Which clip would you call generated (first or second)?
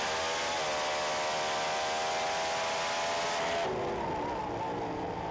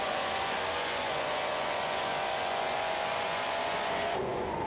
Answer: second